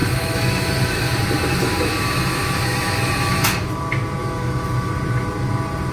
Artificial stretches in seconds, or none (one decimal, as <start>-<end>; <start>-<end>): 0.0-1.1; 1.5-3.7; 4.2-4.9